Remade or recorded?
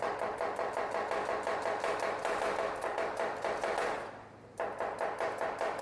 recorded